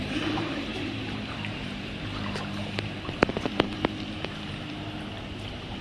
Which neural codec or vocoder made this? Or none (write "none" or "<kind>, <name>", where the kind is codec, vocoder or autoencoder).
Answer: vocoder, BigVGAN v2